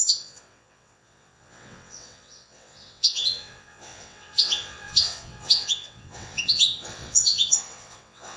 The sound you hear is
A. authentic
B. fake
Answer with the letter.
B